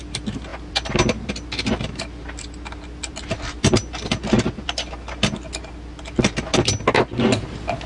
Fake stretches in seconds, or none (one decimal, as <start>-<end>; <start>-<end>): none